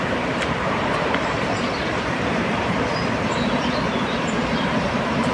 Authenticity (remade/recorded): remade